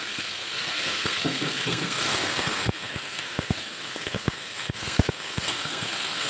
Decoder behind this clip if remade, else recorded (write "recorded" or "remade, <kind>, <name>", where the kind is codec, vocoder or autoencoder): remade, codec, SNAC